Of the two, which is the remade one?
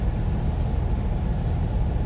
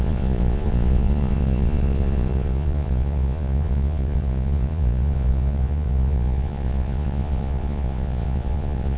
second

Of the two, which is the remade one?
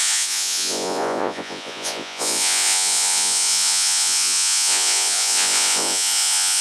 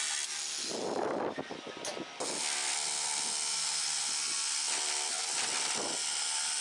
first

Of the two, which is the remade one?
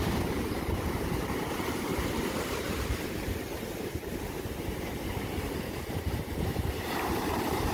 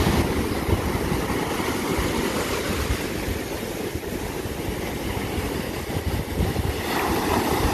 first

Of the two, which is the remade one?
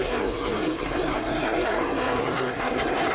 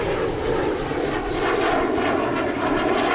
first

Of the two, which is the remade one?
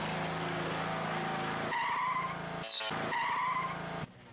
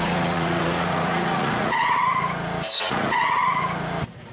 second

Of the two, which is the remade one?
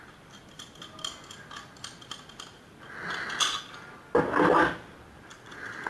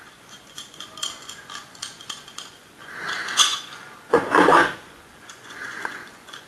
second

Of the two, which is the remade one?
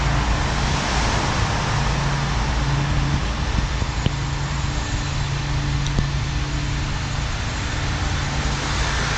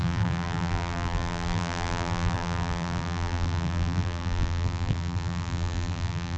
second